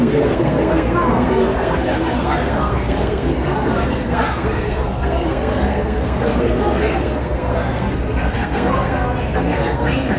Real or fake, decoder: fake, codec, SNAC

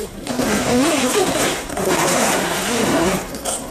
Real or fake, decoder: fake, codec, SNAC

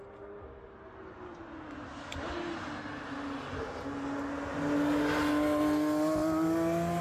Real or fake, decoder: real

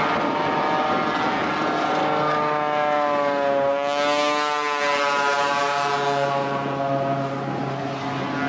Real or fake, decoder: real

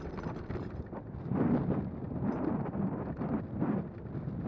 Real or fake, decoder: real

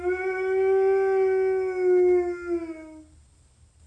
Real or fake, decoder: real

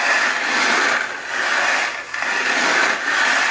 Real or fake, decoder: real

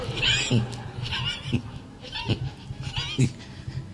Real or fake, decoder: real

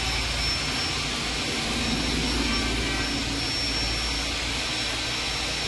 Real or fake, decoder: real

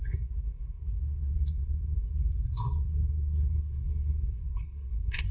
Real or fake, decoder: fake, codec, SNAC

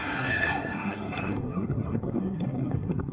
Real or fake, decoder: fake, codec, SNAC